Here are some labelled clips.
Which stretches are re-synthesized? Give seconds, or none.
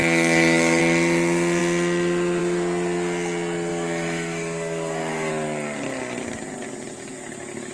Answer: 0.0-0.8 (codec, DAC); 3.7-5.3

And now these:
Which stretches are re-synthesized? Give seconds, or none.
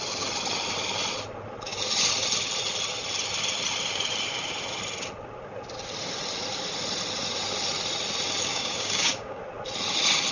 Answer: 8.5-9.4 (codec, DAC)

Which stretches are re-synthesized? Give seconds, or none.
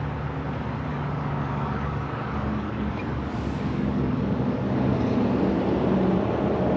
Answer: 0.9-5.0 (codec, DAC)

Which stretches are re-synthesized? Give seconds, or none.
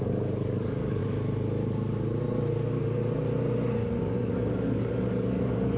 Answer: 0.0-1.0 (codec, DAC); 4.0-5.8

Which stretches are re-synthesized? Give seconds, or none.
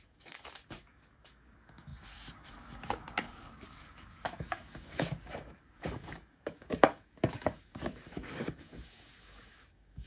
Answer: 0.0-10.1 (codec, DAC)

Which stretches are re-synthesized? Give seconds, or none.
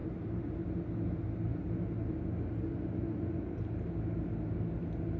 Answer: none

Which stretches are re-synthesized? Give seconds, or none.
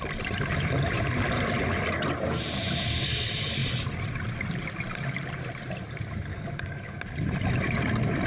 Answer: 6.3-7.0 (codec, DAC)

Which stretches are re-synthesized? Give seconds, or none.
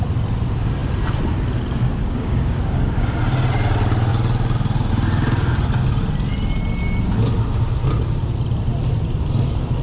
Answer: 2.0-3.2 (codec, DAC)